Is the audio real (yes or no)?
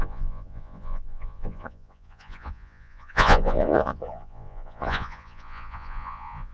no